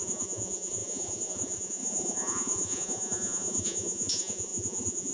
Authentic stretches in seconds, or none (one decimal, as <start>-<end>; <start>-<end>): none